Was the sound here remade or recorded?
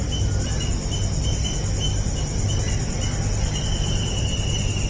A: recorded